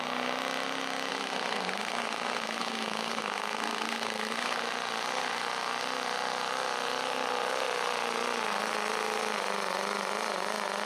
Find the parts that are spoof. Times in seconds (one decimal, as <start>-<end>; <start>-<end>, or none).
1.1-4.6